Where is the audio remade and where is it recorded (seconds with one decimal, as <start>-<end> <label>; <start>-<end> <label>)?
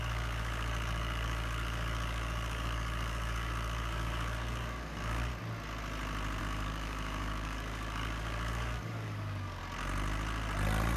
0.0-5.3 remade; 5.3-6.4 recorded; 6.4-9.6 remade; 9.6-11.0 recorded